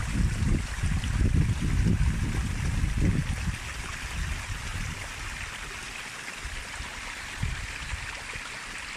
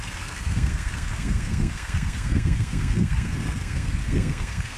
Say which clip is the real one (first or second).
first